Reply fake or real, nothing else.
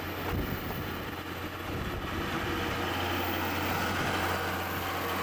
real